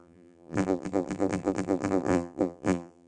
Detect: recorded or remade remade